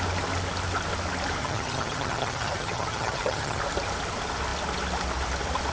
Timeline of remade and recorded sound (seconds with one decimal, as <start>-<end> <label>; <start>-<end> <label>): 0.0-1.4 recorded; 1.4-3.6 remade; 3.6-5.7 recorded